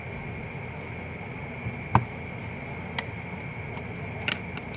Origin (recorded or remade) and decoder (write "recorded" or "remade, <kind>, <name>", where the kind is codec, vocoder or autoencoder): recorded